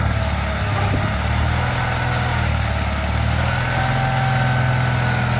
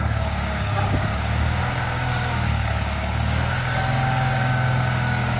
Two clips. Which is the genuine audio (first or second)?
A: first